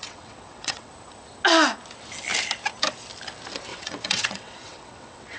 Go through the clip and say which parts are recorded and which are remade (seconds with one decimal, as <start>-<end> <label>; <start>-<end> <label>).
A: 0.0-0.9 remade; 0.9-3.7 recorded; 3.7-5.4 remade